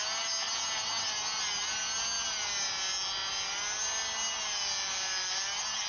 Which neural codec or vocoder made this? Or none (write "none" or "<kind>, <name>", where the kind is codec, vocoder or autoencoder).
none